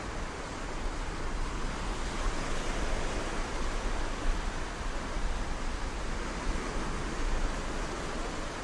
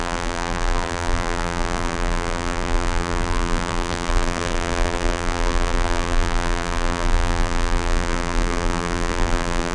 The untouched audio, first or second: first